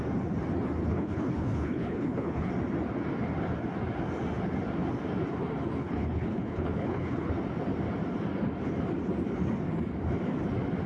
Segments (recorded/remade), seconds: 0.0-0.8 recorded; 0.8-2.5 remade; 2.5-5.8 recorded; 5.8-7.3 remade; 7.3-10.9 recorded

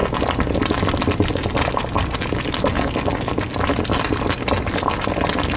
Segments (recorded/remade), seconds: 0.0-5.6 recorded